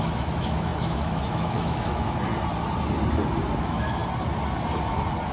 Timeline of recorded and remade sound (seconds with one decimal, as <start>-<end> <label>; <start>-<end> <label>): 0.0-2.3 remade; 2.3-3.6 recorded; 3.6-4.0 remade; 4.0-5.3 recorded